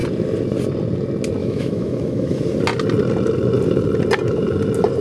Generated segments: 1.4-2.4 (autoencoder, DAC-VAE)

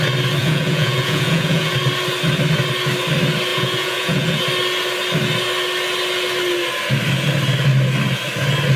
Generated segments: 0.4-1.7 (vocoder, Vocos); 3.5-4.4

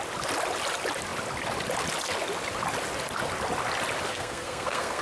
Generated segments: 4.1-5.0 (codec, SNAC)

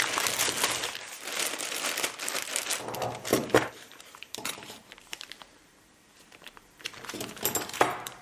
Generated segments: 3.3-8.2 (vocoder, BigVGAN v2)

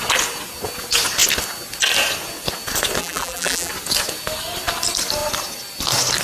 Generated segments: 3.0-3.7 (vocoder, BigVGAN v2)

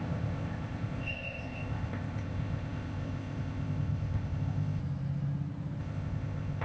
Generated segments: 0.0-4.8 (codec, ZipCodec); 5.8-6.6